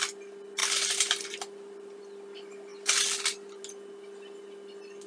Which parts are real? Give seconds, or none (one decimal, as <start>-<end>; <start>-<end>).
0.0-0.6; 2.0-2.7; 3.6-5.1